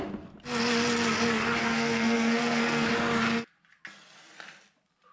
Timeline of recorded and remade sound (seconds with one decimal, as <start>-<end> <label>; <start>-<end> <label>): 0.0-1.6 recorded; 1.6-2.9 remade; 2.9-5.1 recorded